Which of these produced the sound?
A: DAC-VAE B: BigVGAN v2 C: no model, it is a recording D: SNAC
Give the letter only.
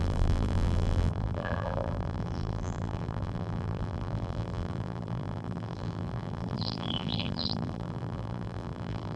B